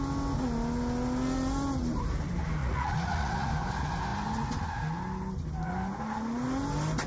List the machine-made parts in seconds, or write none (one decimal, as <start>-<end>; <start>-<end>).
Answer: 2.6-3.5